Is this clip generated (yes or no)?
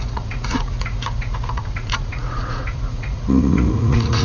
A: yes